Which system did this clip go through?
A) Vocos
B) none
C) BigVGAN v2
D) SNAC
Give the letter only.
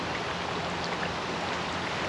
B